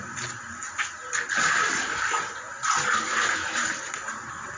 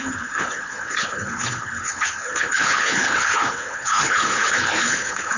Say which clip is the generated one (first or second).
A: second